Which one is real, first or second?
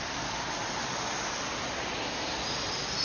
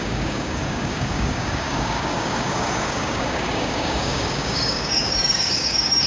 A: first